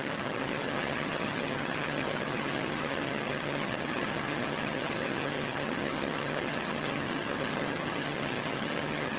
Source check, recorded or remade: remade